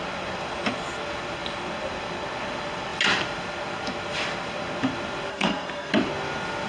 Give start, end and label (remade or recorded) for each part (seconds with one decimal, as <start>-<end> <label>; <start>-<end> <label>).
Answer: 0.0-5.3 recorded; 5.3-5.9 remade; 5.9-6.7 recorded